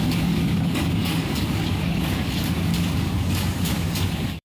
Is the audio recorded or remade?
remade